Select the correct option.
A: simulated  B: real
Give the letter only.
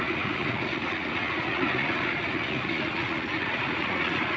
A